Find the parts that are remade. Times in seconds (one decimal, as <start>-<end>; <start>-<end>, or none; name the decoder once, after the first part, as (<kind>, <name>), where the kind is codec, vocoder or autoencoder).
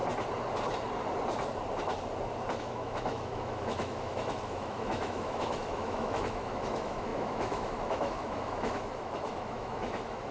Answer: 2.6-10.3 (autoencoder, DAC-VAE)